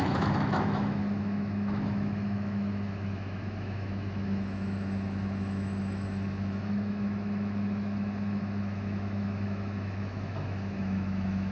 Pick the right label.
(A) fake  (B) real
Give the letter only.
A